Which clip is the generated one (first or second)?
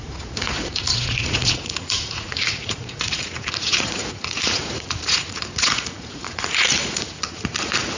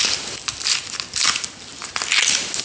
first